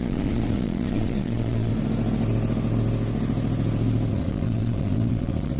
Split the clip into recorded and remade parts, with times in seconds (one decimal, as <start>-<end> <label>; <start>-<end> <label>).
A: 0.0-1.7 remade; 1.7-4.1 recorded; 4.1-5.6 remade